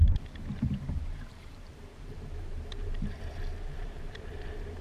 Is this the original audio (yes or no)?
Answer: no